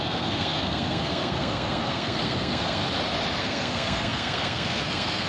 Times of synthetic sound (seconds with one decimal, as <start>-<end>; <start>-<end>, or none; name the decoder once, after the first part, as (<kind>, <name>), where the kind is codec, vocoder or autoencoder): 0.0-2.8 (codec, SNAC); 3.4-5.3